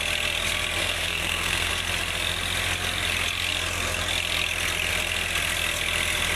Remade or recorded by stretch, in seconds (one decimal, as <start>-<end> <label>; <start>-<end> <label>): 0.0-0.8 recorded; 0.8-1.7 remade; 1.7-6.4 recorded